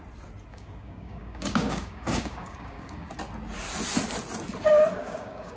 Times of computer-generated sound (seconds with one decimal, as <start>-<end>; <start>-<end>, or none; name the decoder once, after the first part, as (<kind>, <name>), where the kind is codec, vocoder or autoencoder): 0.5-3.1 (codec, DAC); 5.0-5.6